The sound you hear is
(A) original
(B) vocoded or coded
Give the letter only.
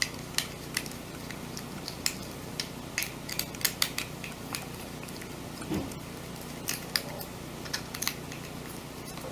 A